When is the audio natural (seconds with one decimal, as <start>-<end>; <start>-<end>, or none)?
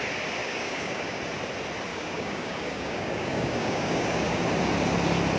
0.0-0.4; 1.2-1.9; 4.4-5.4